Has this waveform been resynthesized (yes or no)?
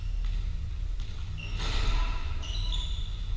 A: no